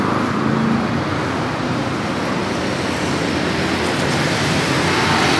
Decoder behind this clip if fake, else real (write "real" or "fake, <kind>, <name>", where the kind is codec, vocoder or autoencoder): real